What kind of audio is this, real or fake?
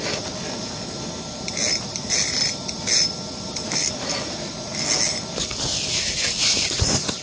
real